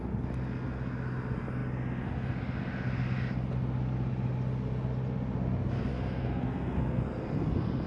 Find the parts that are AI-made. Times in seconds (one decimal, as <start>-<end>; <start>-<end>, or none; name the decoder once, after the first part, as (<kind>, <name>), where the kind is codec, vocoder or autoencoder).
5.9-7.0 (codec, SNAC)